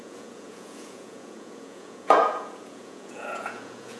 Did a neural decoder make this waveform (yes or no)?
yes